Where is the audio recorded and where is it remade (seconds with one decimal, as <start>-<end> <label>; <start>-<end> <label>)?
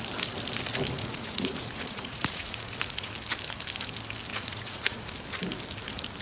0.0-1.0 recorded; 1.0-3.1 remade; 3.1-4.3 recorded; 4.3-5.1 remade; 5.1-6.2 recorded